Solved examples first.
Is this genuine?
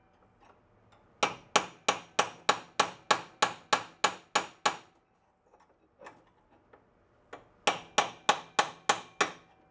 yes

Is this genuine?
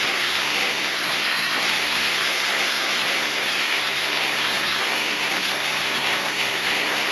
no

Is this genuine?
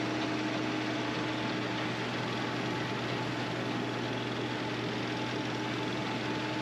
yes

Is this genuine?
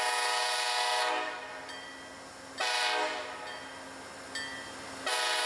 yes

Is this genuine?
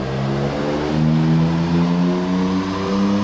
yes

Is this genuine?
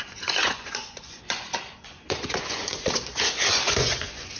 no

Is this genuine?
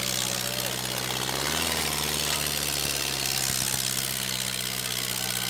yes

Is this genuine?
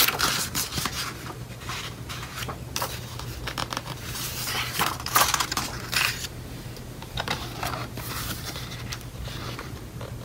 no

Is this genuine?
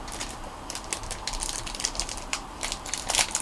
yes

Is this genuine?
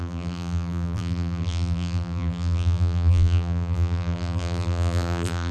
no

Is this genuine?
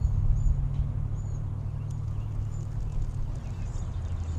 yes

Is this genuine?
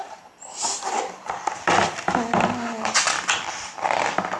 no